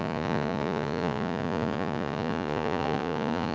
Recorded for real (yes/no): no